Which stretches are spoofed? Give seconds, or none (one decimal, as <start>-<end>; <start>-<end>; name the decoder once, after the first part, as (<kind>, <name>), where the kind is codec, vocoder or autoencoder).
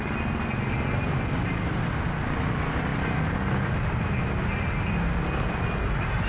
none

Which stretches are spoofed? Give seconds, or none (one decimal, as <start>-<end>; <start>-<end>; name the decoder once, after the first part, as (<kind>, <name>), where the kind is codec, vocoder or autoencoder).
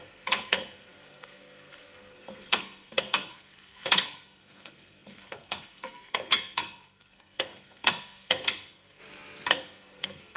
0.0-9.0 (codec, SNAC); 9.5-10.4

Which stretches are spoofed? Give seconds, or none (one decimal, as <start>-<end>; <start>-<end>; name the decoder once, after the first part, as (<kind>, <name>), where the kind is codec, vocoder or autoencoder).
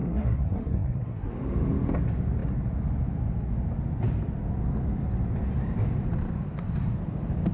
0.0-1.3 (codec, SNAC)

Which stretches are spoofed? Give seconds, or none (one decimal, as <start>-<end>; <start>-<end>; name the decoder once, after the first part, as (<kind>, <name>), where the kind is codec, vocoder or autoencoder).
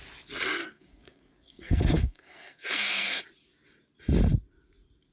0.6-3.2 (codec, SNAC)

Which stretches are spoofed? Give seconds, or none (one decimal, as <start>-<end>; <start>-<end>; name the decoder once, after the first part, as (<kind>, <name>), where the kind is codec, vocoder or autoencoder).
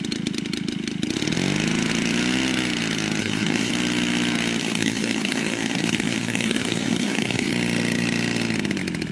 3.2-3.7 (codec, SNAC); 4.6-7.5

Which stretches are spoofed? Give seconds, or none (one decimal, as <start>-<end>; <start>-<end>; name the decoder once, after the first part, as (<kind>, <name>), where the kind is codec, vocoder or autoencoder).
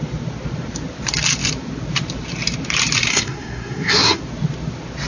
3.1-4.2 (codec, SNAC)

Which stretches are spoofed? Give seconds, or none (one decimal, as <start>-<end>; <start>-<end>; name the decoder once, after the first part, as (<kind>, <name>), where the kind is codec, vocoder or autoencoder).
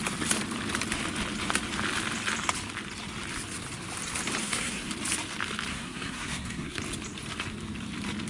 4.4-4.9 (codec, SNAC); 5.7-6.8